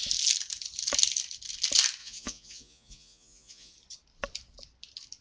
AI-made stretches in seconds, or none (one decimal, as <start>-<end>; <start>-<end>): 2.0-3.7